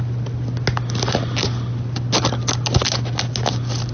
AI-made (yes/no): no